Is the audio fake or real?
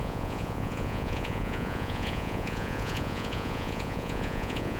fake